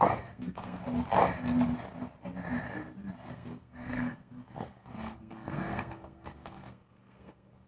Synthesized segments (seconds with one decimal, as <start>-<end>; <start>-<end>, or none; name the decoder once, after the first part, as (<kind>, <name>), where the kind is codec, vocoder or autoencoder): 0.0-0.8 (codec, SNAC); 3.3-7.7